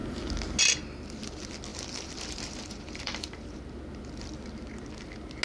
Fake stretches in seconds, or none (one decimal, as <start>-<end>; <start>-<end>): 1.7-3.6